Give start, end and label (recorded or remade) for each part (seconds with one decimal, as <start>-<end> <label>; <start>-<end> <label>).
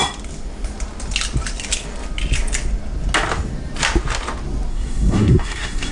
0.0-4.7 recorded; 4.7-5.9 remade